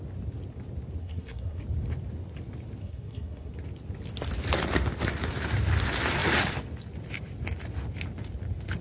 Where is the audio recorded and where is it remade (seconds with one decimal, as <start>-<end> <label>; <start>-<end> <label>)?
0.0-1.0 recorded; 1.0-1.6 remade; 1.6-2.8 recorded; 2.8-3.5 remade; 3.5-8.8 recorded

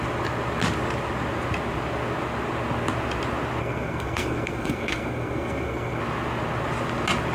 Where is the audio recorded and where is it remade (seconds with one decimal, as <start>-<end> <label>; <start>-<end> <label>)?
0.0-3.6 recorded; 3.6-6.0 remade; 6.0-7.3 recorded

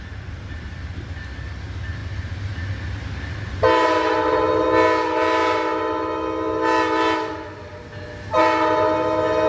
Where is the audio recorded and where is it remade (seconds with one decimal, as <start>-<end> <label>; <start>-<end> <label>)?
0.0-9.5 recorded

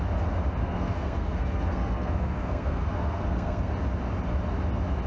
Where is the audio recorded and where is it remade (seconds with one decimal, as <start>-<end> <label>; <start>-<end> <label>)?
0.0-0.6 recorded; 0.6-3.7 remade; 3.7-5.1 recorded

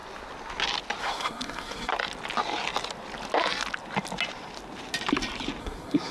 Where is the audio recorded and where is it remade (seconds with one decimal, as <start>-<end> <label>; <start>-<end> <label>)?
0.0-1.0 recorded; 1.0-1.9 remade; 1.9-5.6 recorded; 5.6-6.1 remade

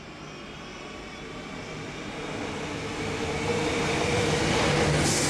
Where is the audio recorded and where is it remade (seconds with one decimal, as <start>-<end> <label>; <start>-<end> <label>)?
0.0-5.3 recorded

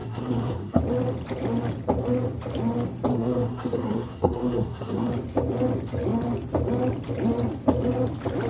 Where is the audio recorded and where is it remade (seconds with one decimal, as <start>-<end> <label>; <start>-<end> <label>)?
0.0-0.8 remade; 0.8-3.1 recorded; 3.1-5.1 remade; 5.1-8.5 recorded

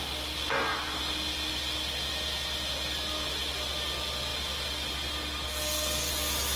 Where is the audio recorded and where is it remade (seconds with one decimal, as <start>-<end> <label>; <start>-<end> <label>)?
0.0-5.5 recorded; 5.5-6.1 remade; 6.1-6.6 recorded